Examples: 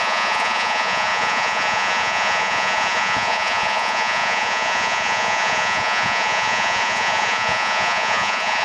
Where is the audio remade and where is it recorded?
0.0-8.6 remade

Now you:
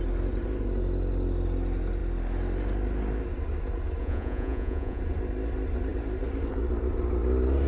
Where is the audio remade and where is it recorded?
0.0-4.0 recorded; 4.0-5.0 remade; 5.0-7.7 recorded

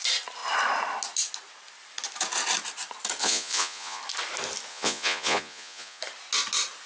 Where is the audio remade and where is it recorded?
0.0-3.2 recorded; 3.2-4.0 remade; 4.0-4.7 recorded; 4.7-6.0 remade; 6.0-6.9 recorded